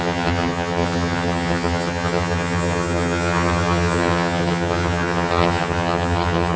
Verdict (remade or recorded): remade